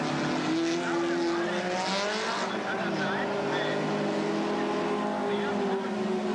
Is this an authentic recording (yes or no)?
yes